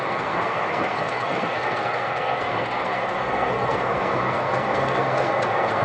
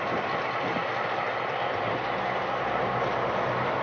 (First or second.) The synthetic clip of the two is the first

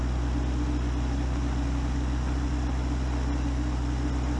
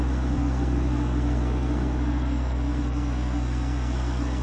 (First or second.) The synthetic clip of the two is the second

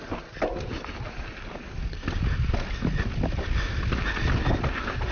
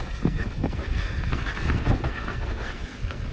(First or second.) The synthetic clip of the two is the second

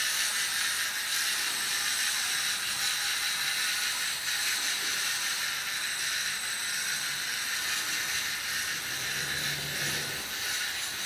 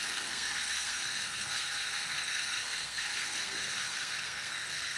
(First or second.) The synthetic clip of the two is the second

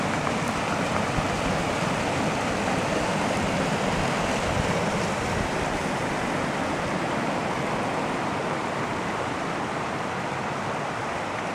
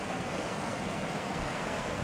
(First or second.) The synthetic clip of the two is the second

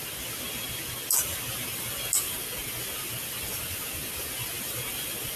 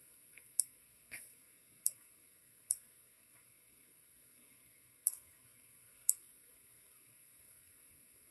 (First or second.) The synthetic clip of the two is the second